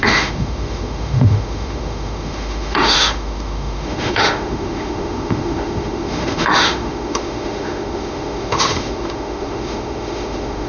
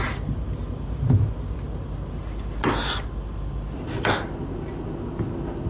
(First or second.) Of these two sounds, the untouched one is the second